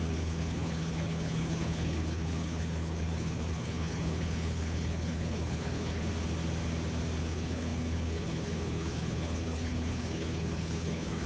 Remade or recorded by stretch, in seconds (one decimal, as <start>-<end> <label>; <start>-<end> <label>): 0.0-6.1 remade; 6.1-7.2 recorded; 7.2-11.3 remade